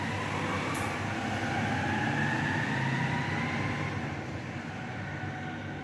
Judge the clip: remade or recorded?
recorded